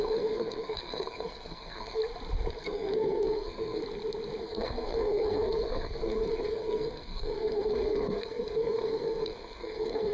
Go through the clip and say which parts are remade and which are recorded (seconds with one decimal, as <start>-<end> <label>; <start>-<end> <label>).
0.0-2.0 remade; 2.0-2.5 recorded; 2.5-3.8 remade; 3.8-4.4 recorded; 4.4-10.1 remade

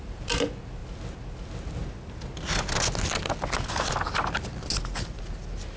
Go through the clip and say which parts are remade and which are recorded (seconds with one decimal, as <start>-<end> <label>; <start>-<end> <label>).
0.0-5.8 recorded

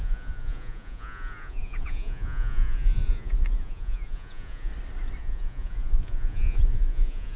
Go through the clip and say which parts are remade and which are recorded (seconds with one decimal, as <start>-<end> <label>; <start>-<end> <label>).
0.0-4.7 remade; 4.7-5.2 recorded; 5.2-7.4 remade

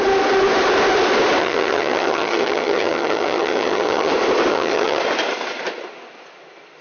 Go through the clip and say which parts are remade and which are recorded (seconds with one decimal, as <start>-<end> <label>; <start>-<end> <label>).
0.0-1.4 recorded; 1.4-4.1 remade; 4.1-4.5 recorded; 4.5-5.0 remade; 5.0-6.8 recorded